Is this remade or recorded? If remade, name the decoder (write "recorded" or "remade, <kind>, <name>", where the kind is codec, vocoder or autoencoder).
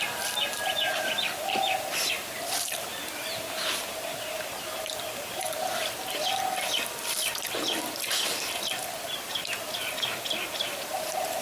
remade, vocoder, BigVGAN v2